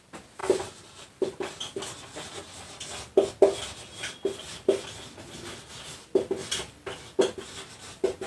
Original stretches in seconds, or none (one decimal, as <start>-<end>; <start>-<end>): 0.0-8.3